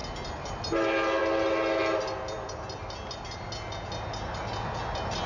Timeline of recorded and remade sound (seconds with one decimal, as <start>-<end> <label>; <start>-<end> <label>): 0.0-5.3 recorded